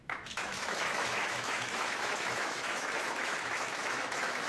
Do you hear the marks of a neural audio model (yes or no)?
yes